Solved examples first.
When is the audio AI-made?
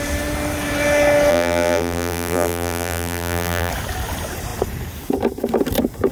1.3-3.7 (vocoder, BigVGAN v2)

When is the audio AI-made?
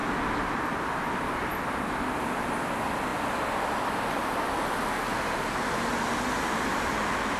6.7-7.4 (vocoder, BigVGAN v2)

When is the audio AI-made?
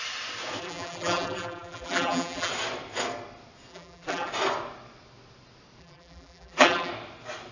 0.6-2.5 (vocoder, BigVGAN v2); 3.7-4.3; 5.8-6.9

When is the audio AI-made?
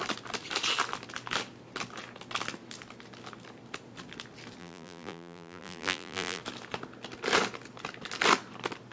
4.6-6.4 (vocoder, BigVGAN v2)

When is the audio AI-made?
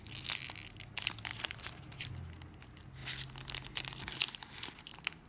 1.3-2.1 (vocoder, BigVGAN v2)